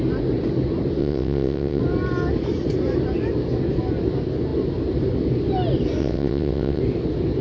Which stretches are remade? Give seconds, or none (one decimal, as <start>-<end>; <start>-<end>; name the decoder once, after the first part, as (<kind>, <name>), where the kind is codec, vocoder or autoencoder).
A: 1.0-1.8 (vocoder, WaveNeXt); 6.0-6.8